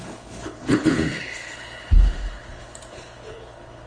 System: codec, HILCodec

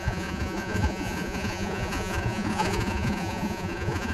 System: vocoder, Vocos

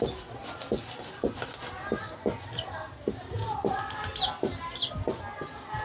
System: none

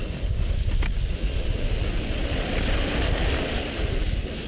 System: none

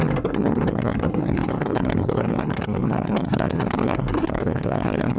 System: codec, SNAC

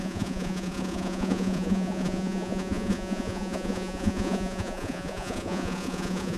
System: vocoder, Vocos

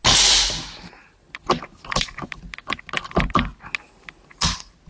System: none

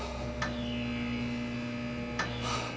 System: none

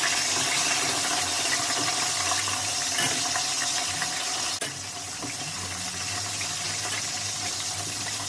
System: none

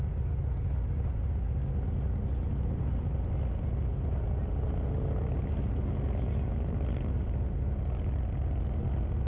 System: none